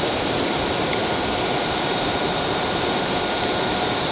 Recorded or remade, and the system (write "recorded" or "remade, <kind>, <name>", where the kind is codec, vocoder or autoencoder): recorded